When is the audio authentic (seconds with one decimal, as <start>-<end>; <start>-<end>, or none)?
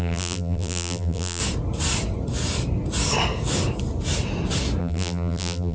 1.4-4.8